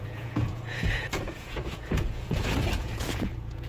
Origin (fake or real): fake